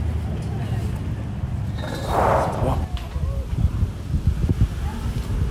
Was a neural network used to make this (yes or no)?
no